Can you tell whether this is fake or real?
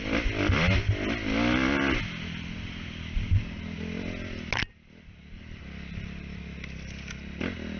real